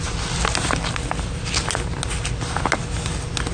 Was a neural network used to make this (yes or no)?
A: no